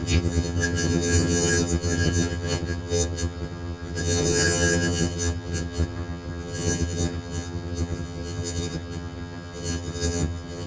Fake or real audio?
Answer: fake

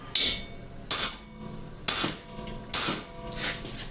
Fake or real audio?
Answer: real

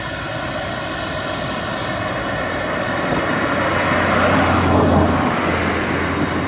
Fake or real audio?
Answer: real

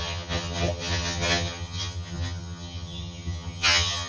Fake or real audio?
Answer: fake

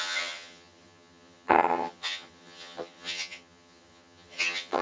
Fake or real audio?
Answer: fake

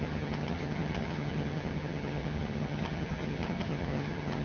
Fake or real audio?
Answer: fake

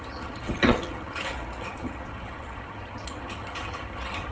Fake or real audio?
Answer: fake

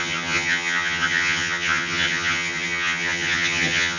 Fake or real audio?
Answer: fake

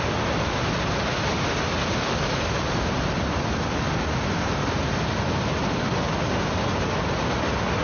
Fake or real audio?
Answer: real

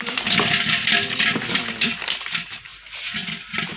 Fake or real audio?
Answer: real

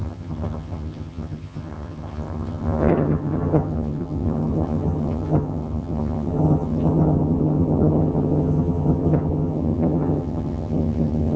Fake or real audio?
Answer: fake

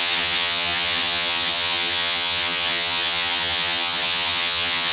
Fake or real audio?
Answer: fake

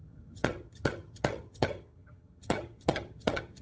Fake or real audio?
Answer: fake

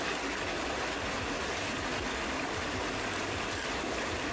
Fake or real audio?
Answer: real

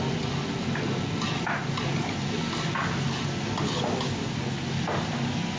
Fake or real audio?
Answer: real